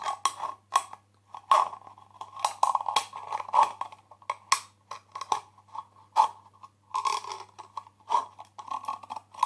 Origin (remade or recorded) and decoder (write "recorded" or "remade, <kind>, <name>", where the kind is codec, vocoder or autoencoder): recorded